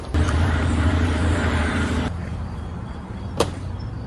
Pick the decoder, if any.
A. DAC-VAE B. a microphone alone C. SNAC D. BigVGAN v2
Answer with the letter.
D